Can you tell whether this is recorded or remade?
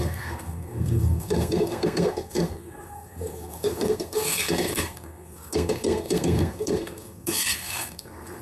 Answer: remade